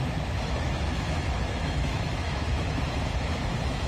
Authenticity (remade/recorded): remade